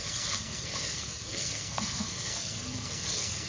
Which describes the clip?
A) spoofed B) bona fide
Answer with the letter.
A